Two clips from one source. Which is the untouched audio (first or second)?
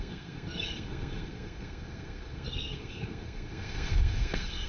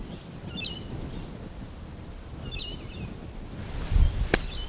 second